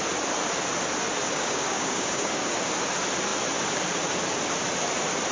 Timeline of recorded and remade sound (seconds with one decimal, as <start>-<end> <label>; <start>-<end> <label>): 0.0-1.3 recorded; 1.3-2.7 remade; 2.7-5.3 recorded